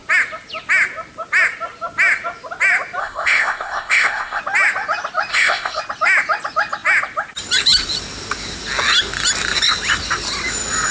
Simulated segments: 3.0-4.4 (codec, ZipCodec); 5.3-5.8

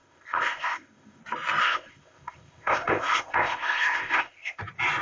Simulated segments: 0.0-1.2 (codec, ZipCodec); 1.6-4.6

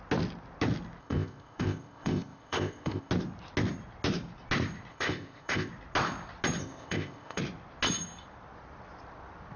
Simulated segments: 1.0-3.1 (codec, ZipCodec); 4.9-5.7; 6.6-7.4